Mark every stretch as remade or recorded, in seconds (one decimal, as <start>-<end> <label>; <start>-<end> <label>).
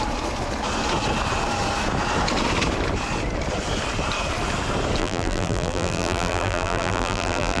0.0-5.0 recorded; 5.0-7.6 remade